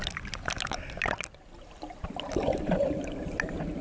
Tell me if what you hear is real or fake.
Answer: real